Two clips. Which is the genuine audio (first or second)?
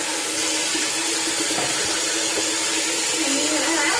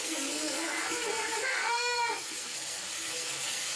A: first